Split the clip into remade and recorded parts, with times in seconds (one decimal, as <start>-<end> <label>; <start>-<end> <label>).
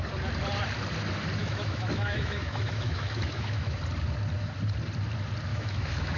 0.0-1.4 recorded; 1.4-3.8 remade; 3.8-5.5 recorded; 5.5-6.2 remade